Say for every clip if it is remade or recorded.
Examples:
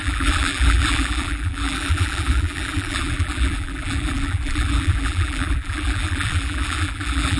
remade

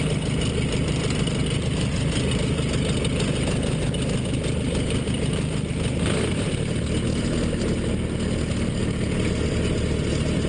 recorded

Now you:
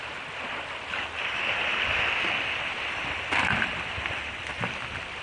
remade